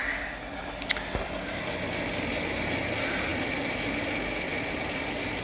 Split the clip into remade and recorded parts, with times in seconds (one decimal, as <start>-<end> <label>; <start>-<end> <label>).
0.0-5.4 recorded

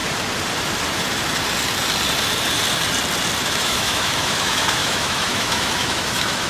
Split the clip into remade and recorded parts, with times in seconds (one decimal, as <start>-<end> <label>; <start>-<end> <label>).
0.0-3.4 recorded; 3.4-6.5 remade

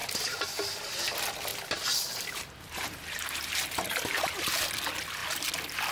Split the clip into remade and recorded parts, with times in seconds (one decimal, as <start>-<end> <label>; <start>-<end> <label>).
0.0-1.5 recorded; 1.5-4.7 remade; 4.7-5.9 recorded

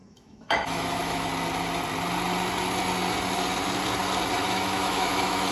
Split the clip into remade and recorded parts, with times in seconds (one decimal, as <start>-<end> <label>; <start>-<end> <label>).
0.0-1.3 remade; 1.3-4.4 recorded; 4.4-5.5 remade

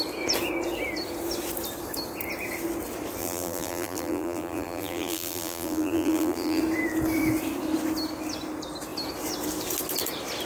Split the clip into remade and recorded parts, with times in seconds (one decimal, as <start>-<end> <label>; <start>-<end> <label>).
0.0-3.2 recorded; 3.2-6.6 remade; 6.6-10.5 recorded